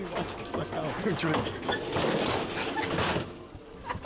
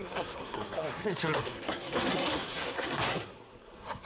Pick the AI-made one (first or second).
second